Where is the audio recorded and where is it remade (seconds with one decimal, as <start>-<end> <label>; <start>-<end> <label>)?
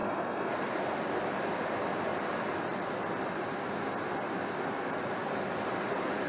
0.0-0.5 remade; 0.5-6.3 recorded